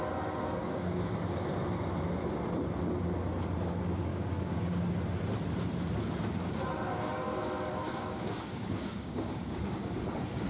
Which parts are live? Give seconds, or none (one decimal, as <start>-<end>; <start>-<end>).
0.0-0.6; 1.2-4.1; 4.9-7.7; 9.8-10.5